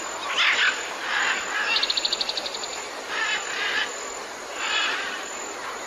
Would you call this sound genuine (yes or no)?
yes